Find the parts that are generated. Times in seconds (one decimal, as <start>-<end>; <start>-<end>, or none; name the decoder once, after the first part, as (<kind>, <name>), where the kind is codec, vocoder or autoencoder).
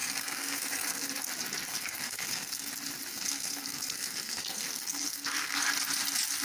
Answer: 0.0-1.1 (codec, SNAC); 1.7-2.7; 3.1-5.7